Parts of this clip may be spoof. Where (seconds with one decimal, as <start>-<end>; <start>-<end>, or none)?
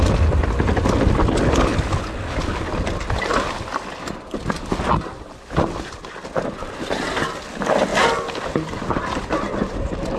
none